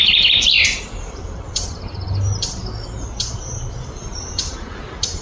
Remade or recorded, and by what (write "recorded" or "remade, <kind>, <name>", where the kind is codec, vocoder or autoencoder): recorded